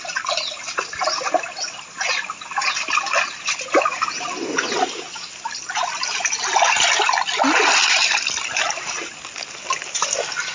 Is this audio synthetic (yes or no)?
no